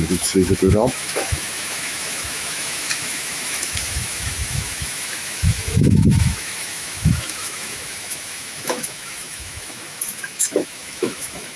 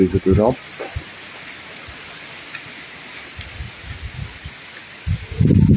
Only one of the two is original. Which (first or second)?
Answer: second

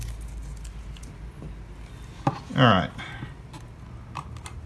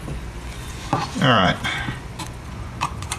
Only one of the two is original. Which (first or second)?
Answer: first